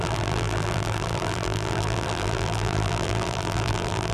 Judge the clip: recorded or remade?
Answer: remade